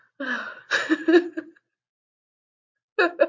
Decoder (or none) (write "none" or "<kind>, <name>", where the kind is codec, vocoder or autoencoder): none